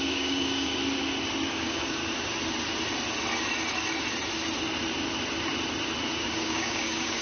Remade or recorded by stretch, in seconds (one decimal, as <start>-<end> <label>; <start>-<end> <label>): 0.0-0.8 remade; 0.8-1.5 recorded; 1.5-2.0 remade; 2.0-6.2 recorded; 6.2-7.2 remade